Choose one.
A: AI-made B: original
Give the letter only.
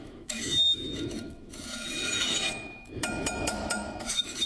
A